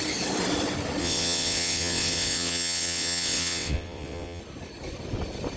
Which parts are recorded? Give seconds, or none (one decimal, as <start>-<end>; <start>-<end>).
0.0-1.0; 4.4-5.6